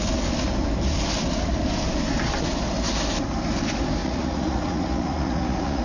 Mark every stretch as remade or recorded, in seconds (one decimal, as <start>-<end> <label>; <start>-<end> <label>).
0.0-4.0 recorded; 4.0-5.8 remade

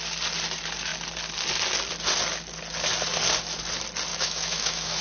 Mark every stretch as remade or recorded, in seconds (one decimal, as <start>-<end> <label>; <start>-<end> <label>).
0.0-4.1 recorded; 4.1-5.0 remade

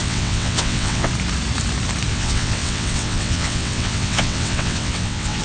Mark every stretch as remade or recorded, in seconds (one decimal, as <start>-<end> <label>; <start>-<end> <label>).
0.0-1.1 remade; 1.1-2.1 recorded; 2.1-5.4 remade

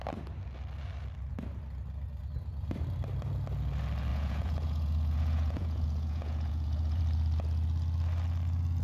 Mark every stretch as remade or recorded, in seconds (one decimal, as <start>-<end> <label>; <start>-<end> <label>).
0.0-4.1 recorded; 4.1-7.0 remade; 7.0-8.8 recorded